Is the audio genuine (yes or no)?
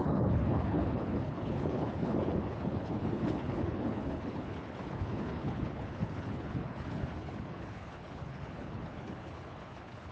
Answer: no